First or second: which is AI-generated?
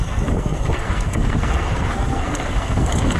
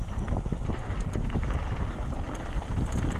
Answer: first